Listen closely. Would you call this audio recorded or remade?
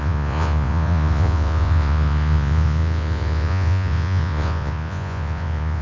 remade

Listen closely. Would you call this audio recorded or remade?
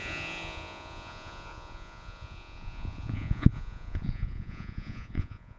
remade